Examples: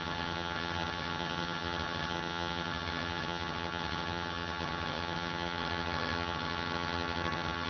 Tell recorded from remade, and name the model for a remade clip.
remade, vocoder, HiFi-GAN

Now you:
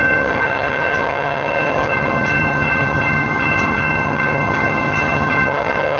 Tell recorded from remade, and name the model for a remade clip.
remade, vocoder, HiFi-GAN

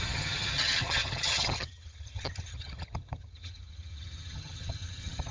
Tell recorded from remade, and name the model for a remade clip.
remade, vocoder, HiFi-GAN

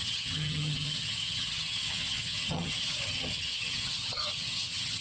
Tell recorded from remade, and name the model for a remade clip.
remade, vocoder, HiFi-GAN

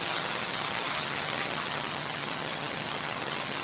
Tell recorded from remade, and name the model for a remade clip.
remade, vocoder, HiFi-GAN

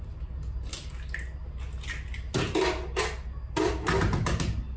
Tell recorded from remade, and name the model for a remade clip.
recorded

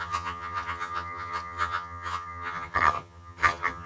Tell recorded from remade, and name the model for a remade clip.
remade, vocoder, HiFi-GAN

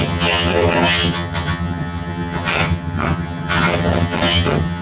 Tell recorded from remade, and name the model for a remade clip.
remade, vocoder, HiFi-GAN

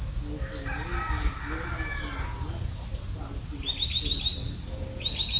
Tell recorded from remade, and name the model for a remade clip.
recorded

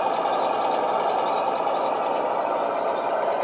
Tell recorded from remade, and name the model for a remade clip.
recorded